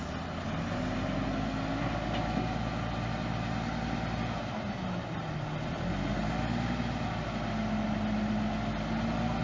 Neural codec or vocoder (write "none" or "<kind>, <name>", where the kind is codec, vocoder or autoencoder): none